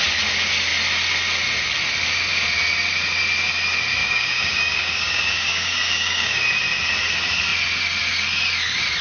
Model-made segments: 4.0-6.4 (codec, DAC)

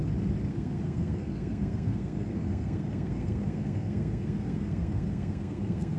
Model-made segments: 0.5-6.0 (codec, SNAC)

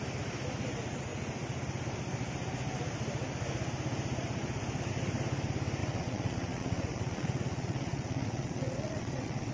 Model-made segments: 5.8-9.5 (vocoder, WaveNeXt)

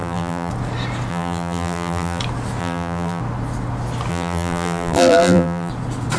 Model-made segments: 0.0-0.5 (vocoder, BigVGAN v2); 1.1-2.2; 2.6-3.2; 4.1-5.7

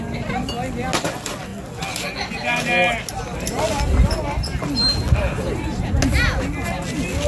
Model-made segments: none

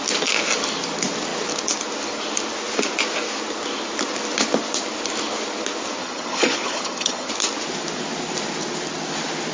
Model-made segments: 6.0-7.3 (vocoder, HiFi-GAN)